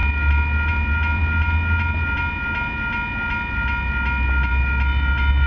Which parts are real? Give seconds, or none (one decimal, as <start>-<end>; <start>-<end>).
0.0-5.5